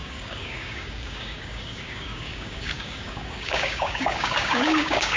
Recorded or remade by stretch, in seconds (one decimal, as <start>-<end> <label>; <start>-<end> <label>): 0.0-5.2 remade